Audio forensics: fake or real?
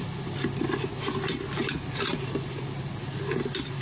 real